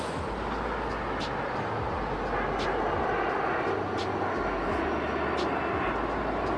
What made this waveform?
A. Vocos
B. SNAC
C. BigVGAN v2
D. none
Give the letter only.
D